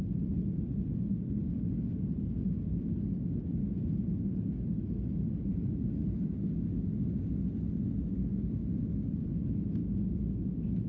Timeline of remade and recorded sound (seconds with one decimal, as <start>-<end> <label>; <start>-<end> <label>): 0.0-10.9 recorded